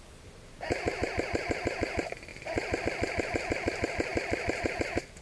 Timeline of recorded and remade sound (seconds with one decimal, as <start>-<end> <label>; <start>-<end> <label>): 0.0-5.2 recorded

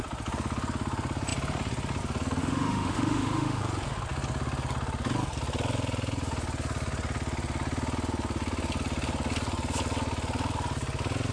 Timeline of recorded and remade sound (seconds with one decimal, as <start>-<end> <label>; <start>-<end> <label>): 0.0-2.4 recorded; 2.4-3.6 remade; 3.6-11.3 recorded

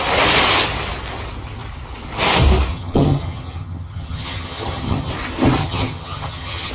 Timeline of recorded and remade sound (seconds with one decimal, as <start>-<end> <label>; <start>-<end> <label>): 0.0-2.7 recorded; 2.7-5.1 remade; 5.1-5.6 recorded; 5.6-6.7 remade

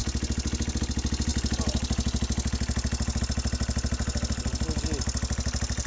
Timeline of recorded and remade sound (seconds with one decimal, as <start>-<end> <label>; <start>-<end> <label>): 0.0-5.9 recorded

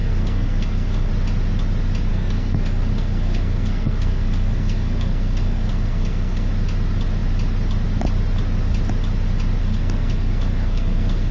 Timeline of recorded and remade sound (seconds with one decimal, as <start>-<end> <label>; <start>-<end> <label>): 0.0-1.1 remade; 1.1-2.1 recorded; 2.1-6.5 remade; 6.5-9.6 recorded; 9.6-11.3 remade